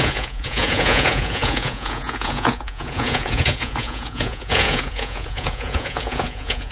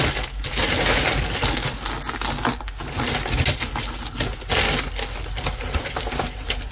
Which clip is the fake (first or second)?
first